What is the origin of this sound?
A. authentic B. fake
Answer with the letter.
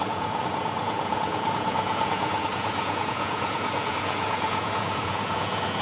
B